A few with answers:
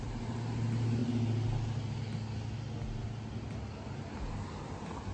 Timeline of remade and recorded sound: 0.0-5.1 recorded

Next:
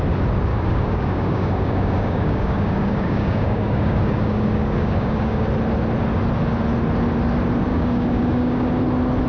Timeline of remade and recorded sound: 0.0-0.5 recorded; 0.5-5.5 remade; 5.5-7.7 recorded; 7.7-8.7 remade; 8.7-9.3 recorded

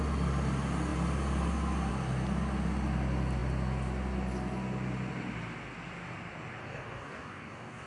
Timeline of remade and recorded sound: 0.0-6.6 recorded; 6.6-7.9 remade

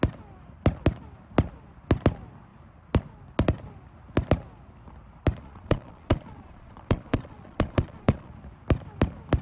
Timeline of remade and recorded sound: 0.0-5.4 recorded; 5.4-8.3 remade; 8.3-9.4 recorded

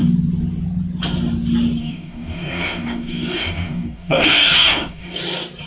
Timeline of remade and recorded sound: 0.0-1.8 recorded; 1.8-5.2 remade; 5.2-5.7 recorded

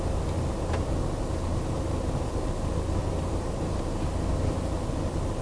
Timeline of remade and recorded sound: 0.0-3.0 recorded; 3.0-3.8 remade; 3.8-5.4 recorded

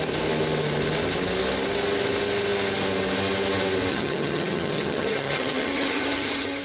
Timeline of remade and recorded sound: 0.0-3.9 recorded; 3.9-6.6 remade

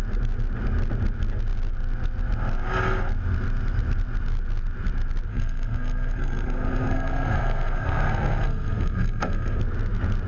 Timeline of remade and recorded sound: 0.0-5.3 recorded; 5.3-9.6 remade; 9.6-10.3 recorded